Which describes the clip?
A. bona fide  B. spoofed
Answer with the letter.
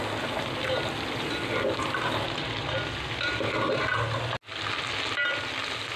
A